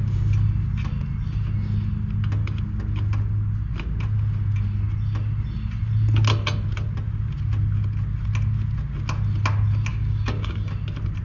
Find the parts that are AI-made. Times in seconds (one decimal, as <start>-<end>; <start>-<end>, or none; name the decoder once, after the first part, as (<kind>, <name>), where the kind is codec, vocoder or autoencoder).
9.9-10.7 (codec, DAC)